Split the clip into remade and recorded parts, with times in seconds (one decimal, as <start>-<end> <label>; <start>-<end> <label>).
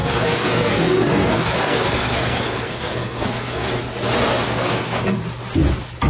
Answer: 0.0-3.7 remade; 3.7-4.3 recorded; 4.3-5.2 remade; 5.2-6.1 recorded